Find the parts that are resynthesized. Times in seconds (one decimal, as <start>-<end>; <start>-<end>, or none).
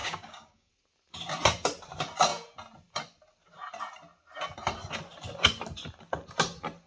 0.0-0.7